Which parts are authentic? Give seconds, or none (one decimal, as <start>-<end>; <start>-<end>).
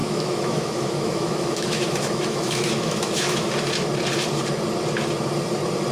3.5-5.9